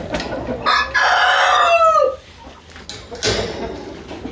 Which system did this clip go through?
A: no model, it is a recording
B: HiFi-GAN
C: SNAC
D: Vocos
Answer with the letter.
A